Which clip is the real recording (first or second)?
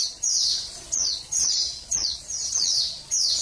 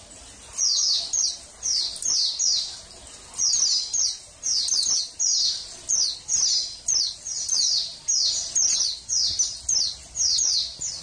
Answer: second